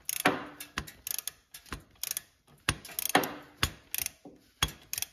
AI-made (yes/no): no